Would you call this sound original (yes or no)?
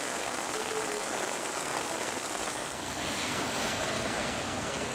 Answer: no